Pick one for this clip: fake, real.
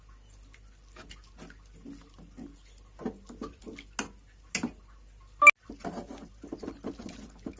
real